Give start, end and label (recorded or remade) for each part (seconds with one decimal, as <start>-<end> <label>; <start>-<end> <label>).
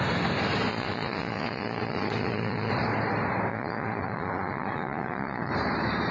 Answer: 0.0-0.7 recorded; 0.7-2.7 remade; 2.7-3.5 recorded; 3.5-5.5 remade; 5.5-6.1 recorded